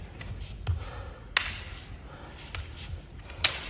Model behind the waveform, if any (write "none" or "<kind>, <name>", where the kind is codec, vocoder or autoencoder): none